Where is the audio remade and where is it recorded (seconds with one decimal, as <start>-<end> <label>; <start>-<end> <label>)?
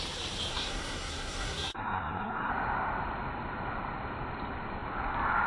0.0-0.5 recorded; 0.5-2.5 remade; 2.5-5.5 recorded